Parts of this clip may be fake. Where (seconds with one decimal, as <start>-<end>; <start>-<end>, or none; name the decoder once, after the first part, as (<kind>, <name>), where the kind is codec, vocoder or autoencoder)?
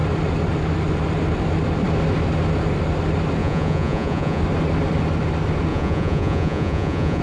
3.4-4.4 (vocoder, Vocos); 5.7-7.2